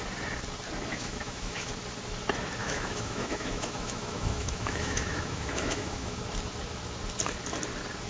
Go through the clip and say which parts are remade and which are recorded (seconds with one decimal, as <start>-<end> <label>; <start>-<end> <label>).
0.0-0.9 recorded; 0.9-1.7 remade; 1.7-2.6 recorded; 2.6-6.2 remade; 6.2-8.1 recorded